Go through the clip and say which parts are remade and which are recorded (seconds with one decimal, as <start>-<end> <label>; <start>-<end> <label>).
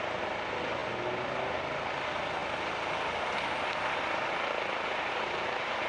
0.0-5.9 recorded